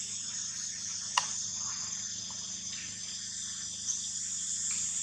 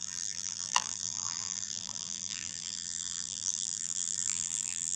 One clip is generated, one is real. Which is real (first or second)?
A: first